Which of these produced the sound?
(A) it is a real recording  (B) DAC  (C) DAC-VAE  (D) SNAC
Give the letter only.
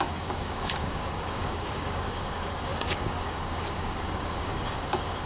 B